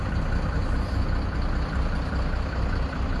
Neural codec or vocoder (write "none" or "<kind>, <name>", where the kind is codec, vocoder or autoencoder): none